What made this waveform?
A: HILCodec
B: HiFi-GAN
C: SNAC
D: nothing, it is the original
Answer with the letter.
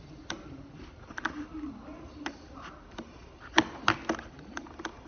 D